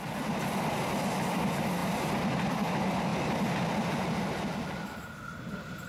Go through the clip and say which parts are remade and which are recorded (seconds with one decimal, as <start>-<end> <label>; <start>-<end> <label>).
0.0-5.9 recorded